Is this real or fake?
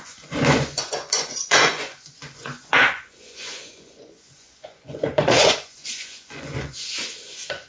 fake